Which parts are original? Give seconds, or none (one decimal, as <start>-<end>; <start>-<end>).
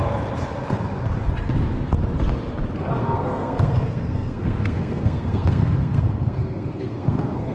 0.0-3.0